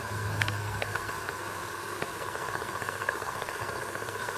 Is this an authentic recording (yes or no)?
no